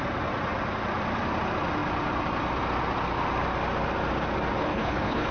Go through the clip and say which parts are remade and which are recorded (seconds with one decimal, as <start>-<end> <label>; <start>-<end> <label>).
0.0-4.6 recorded; 4.6-5.3 remade